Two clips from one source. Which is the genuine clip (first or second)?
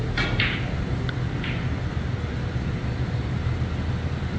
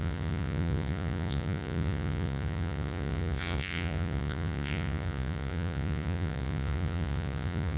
first